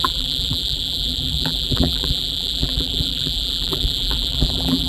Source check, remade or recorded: remade